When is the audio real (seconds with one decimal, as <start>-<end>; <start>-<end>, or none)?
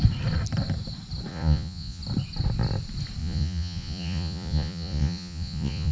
0.0-1.3; 2.0-3.2